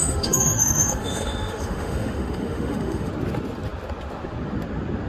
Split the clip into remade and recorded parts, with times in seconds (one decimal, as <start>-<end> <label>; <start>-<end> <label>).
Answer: 0.0-3.1 remade; 3.1-5.1 recorded